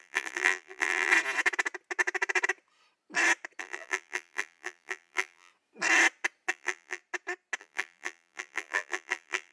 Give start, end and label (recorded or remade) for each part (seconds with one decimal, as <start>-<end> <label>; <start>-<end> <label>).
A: 0.0-1.1 remade; 1.1-3.6 recorded; 3.6-5.5 remade; 5.5-6.5 recorded; 6.5-7.0 remade; 7.0-7.6 recorded; 7.6-9.5 remade